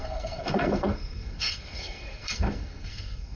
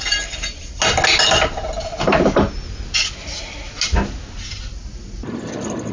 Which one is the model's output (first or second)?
first